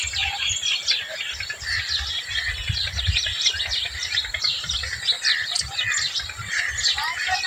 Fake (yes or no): no